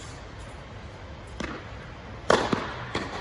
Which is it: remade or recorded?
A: recorded